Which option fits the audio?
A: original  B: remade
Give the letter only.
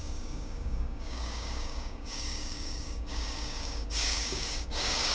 B